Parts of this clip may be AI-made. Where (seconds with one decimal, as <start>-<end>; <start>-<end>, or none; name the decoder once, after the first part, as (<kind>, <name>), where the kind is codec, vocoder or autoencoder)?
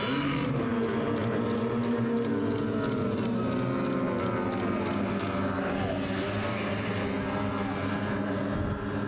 none